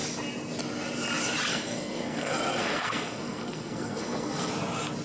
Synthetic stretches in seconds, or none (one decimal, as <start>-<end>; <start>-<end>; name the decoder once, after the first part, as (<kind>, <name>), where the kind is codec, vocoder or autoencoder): 1.5-4.5 (codec, SNAC)